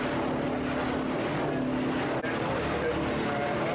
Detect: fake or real real